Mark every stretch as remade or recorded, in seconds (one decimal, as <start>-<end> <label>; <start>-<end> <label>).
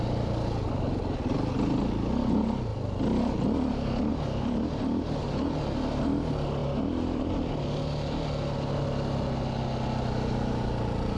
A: 0.0-11.2 recorded